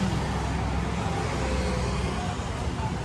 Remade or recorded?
recorded